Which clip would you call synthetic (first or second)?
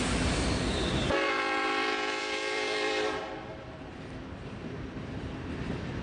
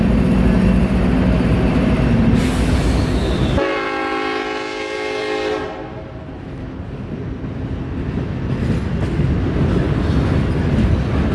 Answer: first